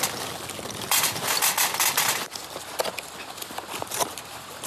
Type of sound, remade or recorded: recorded